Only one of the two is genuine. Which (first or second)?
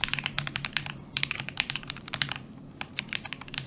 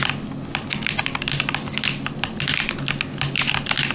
second